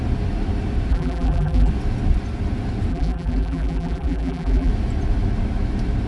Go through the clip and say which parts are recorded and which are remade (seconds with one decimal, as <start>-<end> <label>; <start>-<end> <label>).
0.0-0.9 recorded; 0.9-1.7 remade; 1.7-2.9 recorded; 2.9-4.7 remade; 4.7-6.1 recorded